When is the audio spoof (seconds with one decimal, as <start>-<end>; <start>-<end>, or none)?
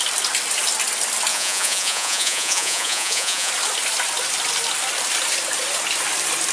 1.3-3.5